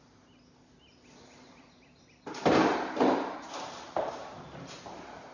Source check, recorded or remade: recorded